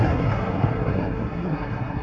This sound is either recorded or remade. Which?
remade